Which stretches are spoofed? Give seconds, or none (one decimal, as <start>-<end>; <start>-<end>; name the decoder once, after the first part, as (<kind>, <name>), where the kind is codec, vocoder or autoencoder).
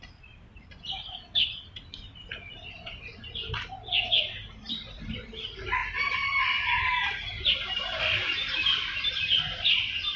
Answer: 0.0-3.1 (vocoder, BigVGAN v2); 4.5-5.8; 9.1-10.2